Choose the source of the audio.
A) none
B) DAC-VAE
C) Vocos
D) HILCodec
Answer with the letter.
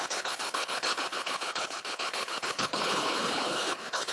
D